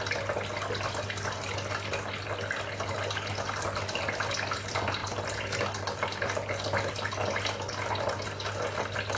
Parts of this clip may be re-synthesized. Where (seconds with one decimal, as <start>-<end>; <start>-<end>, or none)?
none